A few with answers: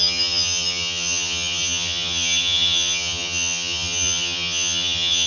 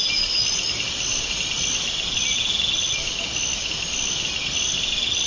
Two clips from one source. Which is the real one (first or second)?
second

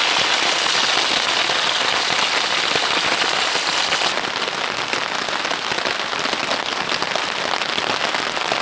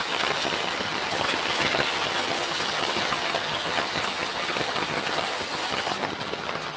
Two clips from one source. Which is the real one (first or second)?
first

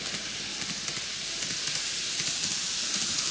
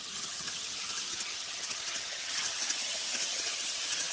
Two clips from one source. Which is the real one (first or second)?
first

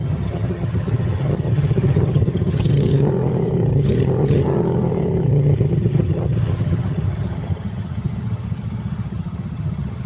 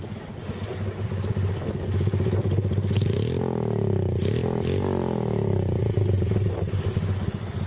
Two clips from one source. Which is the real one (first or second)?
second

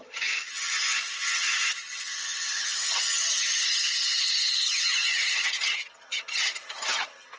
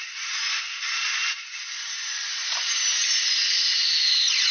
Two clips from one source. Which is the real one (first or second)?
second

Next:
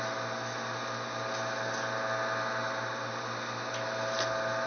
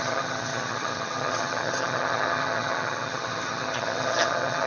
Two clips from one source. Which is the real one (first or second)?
first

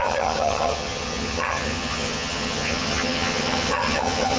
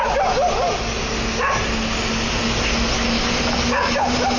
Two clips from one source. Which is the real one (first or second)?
second